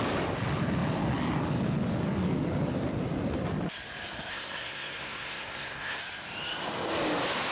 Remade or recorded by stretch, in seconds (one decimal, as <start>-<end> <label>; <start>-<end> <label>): 0.0-4.3 recorded; 4.3-6.0 remade; 6.0-7.5 recorded